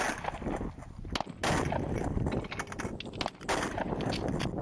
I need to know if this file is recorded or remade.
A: recorded